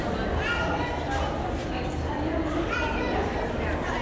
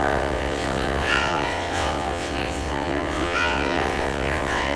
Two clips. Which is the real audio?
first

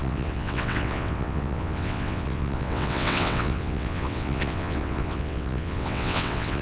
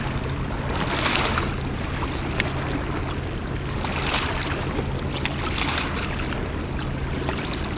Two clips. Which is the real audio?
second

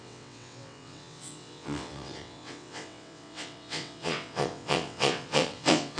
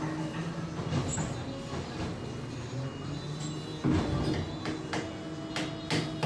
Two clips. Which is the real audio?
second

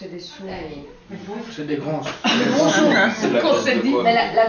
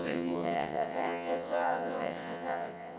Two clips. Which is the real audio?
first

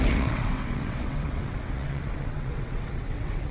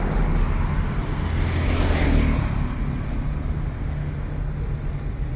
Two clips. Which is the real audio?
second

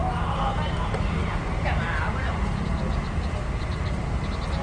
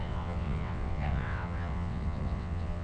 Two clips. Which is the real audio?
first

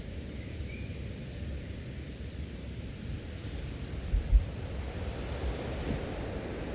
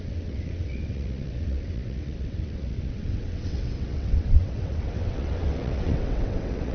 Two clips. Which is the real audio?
first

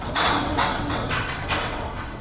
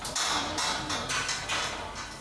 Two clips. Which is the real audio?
second